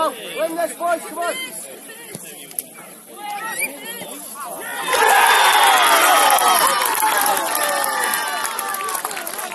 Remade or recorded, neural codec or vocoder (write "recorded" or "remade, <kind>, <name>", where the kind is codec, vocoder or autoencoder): recorded